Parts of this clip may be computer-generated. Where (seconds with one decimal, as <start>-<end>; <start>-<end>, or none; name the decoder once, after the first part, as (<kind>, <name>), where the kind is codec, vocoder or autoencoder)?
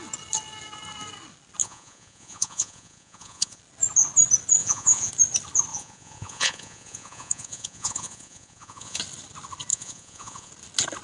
1.6-3.6 (vocoder, Vocos); 4.6-5.1; 5.7-9.0; 9.7-10.5